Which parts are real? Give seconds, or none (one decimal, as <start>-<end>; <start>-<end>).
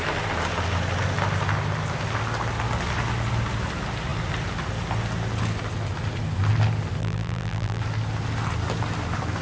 0.0-7.0; 7.8-9.4